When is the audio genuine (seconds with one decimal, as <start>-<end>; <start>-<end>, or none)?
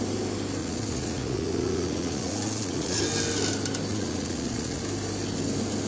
0.0-0.6; 3.0-3.9; 4.8-5.9